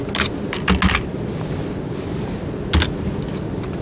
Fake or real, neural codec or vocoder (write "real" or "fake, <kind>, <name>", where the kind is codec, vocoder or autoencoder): real